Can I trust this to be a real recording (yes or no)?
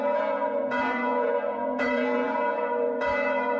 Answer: no